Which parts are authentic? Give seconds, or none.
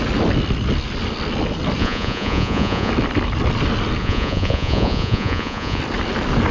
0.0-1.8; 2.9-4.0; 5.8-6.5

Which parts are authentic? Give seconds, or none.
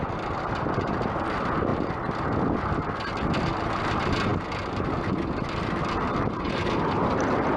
0.0-7.6